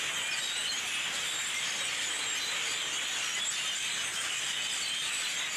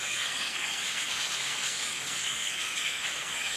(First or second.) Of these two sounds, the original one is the first